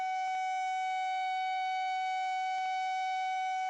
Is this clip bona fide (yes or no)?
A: yes